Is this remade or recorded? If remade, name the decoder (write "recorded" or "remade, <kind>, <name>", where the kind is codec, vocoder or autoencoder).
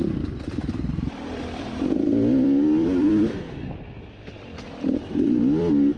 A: remade, vocoder, BigVGAN v2